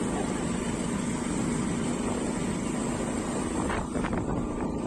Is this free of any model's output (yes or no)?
yes